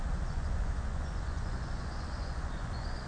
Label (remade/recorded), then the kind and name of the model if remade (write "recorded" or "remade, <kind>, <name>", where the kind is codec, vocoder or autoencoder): remade, vocoder, Vocos